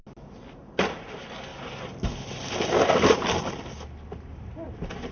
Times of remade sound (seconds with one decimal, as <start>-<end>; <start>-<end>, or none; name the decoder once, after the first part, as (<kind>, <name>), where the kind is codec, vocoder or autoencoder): none